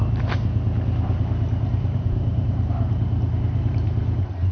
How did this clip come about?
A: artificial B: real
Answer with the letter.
A